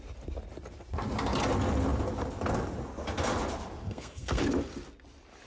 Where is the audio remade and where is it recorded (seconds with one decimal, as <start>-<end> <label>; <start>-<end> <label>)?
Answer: 0.0-3.8 recorded; 3.8-4.4 remade; 4.4-5.5 recorded